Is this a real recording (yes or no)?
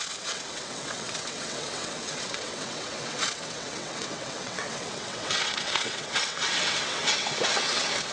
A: no